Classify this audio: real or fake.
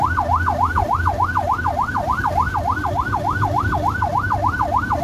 real